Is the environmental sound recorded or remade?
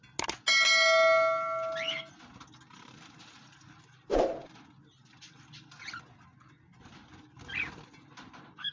recorded